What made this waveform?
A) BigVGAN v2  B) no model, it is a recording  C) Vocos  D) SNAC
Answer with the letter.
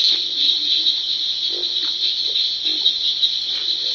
B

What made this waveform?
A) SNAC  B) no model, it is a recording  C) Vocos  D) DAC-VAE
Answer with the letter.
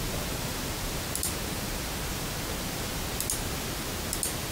B